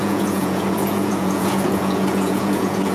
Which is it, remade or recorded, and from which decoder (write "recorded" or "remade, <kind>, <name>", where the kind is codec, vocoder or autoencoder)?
remade, vocoder, Vocos